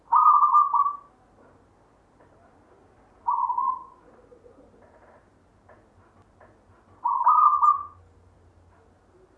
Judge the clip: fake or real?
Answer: real